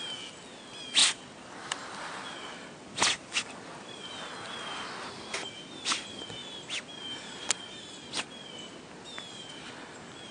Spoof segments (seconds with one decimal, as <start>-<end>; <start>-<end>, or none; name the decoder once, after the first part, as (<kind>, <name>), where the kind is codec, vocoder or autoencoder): none